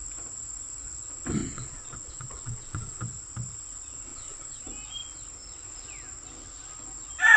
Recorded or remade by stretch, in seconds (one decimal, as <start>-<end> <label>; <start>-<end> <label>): 0.0-1.4 recorded; 1.4-3.0 remade; 3.0-4.1 recorded; 4.1-4.6 remade; 4.6-7.4 recorded